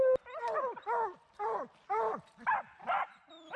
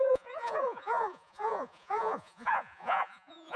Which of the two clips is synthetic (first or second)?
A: second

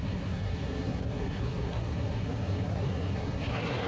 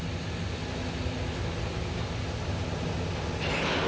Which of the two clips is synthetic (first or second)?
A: first